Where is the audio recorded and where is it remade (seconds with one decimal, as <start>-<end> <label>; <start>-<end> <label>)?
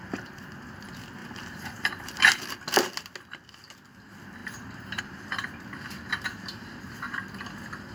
0.0-1.2 recorded; 1.2-2.4 remade; 2.4-6.3 recorded; 6.3-7.3 remade; 7.3-7.9 recorded